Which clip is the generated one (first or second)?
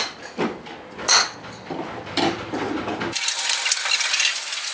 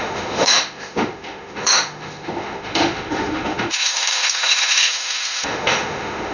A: second